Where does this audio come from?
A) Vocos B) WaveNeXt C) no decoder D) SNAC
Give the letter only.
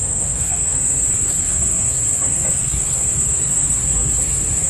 D